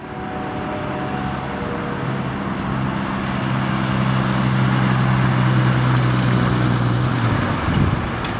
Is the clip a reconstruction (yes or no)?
no